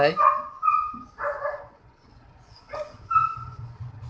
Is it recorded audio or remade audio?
remade